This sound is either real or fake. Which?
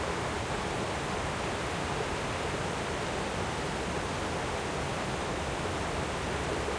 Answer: real